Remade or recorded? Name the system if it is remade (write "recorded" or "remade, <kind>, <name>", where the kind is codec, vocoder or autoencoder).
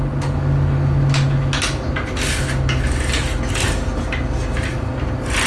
recorded